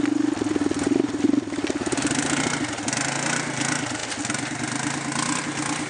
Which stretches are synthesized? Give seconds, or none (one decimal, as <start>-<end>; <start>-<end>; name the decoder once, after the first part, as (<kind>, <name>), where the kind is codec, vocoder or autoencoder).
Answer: none